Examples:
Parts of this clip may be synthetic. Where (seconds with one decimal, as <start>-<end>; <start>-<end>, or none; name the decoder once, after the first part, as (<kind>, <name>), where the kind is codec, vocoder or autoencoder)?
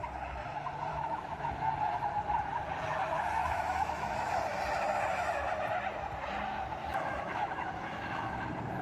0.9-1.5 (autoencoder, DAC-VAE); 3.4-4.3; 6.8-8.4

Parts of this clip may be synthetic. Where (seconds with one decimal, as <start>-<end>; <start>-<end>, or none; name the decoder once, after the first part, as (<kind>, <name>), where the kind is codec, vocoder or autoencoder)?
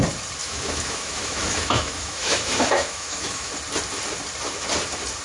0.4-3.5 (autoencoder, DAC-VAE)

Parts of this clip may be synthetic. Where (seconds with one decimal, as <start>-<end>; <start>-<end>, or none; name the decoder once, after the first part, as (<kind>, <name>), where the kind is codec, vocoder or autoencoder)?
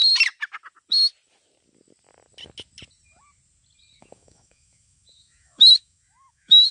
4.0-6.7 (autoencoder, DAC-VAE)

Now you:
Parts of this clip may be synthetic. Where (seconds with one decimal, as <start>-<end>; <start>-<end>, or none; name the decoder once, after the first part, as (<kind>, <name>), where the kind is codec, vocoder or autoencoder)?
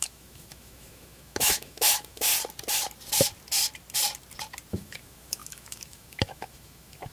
0.0-2.3 (autoencoder, DAC-VAE); 4.7-7.1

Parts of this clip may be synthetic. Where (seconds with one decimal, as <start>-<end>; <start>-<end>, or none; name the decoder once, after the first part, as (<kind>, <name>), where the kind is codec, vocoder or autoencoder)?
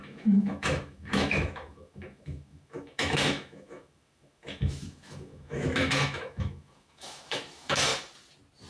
0.0-7.9 (autoencoder, DAC-VAE)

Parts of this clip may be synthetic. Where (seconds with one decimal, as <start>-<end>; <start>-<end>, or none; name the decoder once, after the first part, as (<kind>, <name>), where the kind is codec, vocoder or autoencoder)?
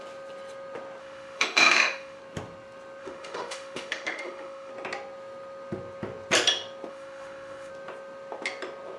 1.0-2.2 (autoencoder, DAC-VAE); 3.0-4.7; 6.9-7.7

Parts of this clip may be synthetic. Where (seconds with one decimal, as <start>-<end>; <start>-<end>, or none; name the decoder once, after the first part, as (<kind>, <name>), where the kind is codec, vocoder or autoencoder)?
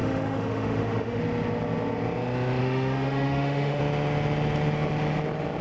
0.0-1.2 (autoencoder, DAC-VAE); 2.6-3.8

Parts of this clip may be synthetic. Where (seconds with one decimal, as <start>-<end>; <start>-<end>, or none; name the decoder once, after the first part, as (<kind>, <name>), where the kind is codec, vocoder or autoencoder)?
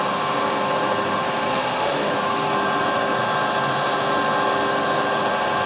1.5-2.1 (autoencoder, DAC-VAE)